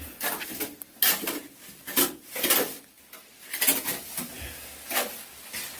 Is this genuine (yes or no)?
yes